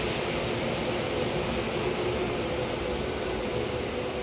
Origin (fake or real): real